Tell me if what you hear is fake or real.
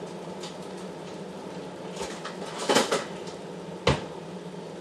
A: real